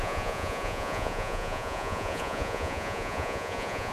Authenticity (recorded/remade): remade